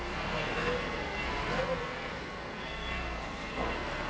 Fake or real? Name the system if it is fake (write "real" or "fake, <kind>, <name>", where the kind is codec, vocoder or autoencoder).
fake, codec, SNAC